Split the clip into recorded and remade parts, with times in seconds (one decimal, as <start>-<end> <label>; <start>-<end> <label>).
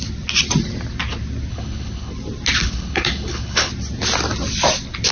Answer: 0.0-1.5 recorded; 1.5-2.1 remade; 2.1-2.6 recorded; 2.6-3.7 remade; 3.7-5.1 recorded